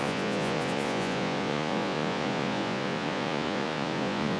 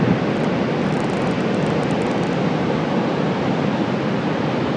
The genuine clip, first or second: second